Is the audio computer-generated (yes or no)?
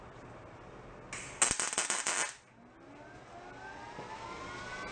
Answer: no